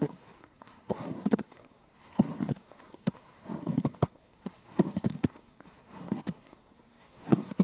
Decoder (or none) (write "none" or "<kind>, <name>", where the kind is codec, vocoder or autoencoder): codec, SNAC